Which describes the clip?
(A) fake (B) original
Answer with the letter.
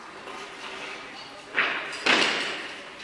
B